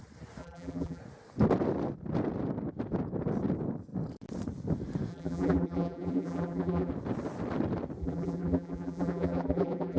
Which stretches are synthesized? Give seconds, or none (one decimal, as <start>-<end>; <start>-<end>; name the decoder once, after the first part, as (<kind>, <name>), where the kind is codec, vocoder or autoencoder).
0.4-1.0 (vocoder, BigVGAN v2); 5.1-6.9; 8.0-10.0